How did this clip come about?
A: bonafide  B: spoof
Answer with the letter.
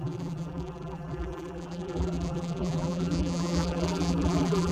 B